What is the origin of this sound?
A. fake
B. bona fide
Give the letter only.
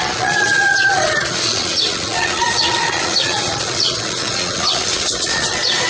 A